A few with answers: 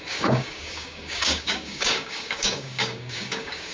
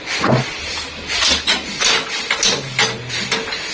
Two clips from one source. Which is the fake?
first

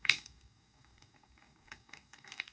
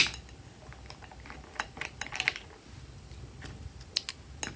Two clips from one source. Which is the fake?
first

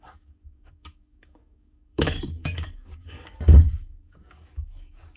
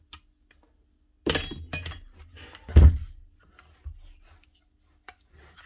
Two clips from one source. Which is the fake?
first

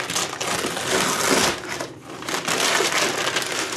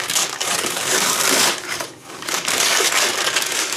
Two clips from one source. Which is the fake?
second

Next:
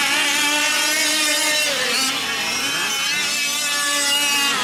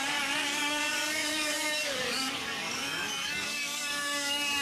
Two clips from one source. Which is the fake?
second